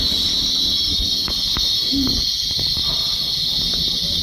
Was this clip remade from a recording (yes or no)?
no